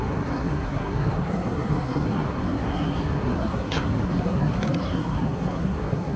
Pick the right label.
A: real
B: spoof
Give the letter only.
B